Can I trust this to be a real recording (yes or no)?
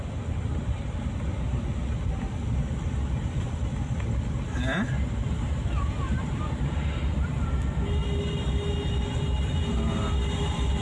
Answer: yes